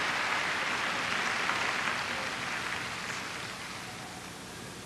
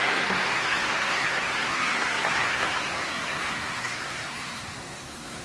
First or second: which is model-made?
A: second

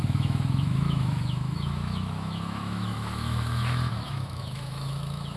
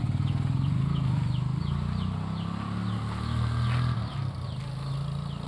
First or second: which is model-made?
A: first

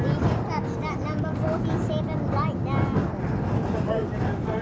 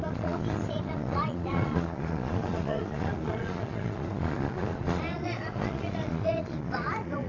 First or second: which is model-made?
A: second